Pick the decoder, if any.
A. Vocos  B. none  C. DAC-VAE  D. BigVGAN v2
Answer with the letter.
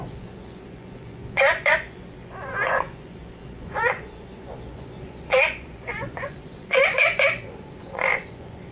A